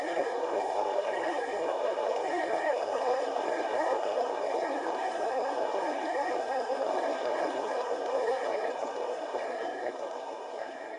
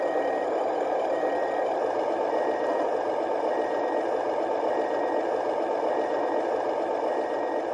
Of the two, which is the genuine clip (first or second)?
second